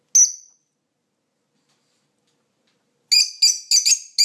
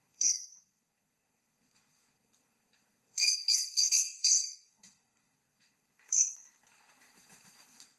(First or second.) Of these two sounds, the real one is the first